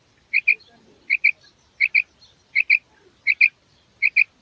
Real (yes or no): yes